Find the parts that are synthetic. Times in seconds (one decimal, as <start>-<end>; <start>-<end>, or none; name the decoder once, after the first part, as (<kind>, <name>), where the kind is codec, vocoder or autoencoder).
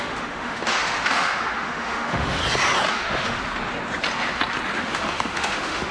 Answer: 0.0-2.4 (autoencoder, DAC-VAE); 2.9-3.4; 4.8-5.9